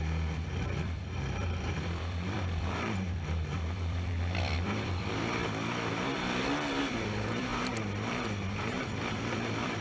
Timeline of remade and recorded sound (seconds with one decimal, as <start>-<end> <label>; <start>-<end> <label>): 0.0-5.4 remade; 5.4-6.8 recorded; 6.8-7.5 remade; 7.5-8.6 recorded; 8.6-9.8 remade